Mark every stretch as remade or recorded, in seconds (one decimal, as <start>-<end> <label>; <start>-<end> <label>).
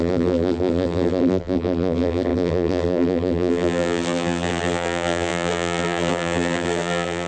0.0-7.3 remade